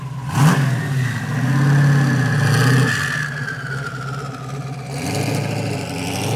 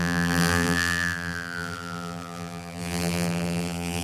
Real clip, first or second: first